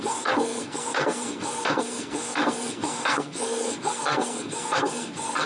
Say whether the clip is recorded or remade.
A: remade